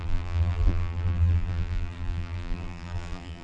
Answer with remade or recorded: remade